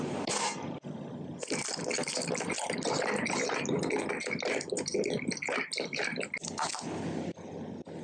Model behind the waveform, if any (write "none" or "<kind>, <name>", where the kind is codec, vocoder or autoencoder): none